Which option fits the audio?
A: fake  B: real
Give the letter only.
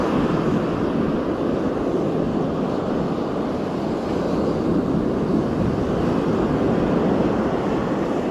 B